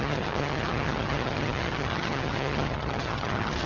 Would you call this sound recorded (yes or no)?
no